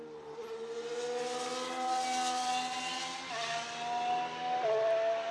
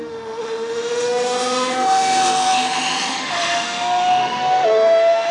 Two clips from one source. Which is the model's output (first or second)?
second